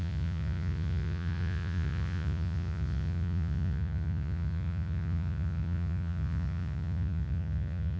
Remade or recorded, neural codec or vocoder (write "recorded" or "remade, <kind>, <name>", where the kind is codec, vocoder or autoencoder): remade, vocoder, Vocos